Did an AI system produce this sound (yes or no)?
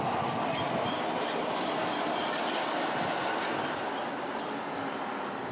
no